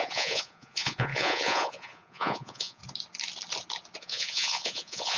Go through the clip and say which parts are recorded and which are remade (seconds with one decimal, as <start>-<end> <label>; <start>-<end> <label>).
0.0-2.8 remade; 2.8-4.0 recorded; 4.0-5.2 remade